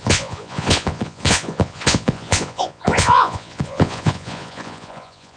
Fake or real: fake